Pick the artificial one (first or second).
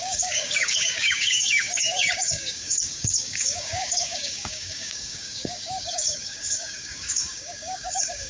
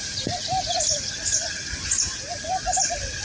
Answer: first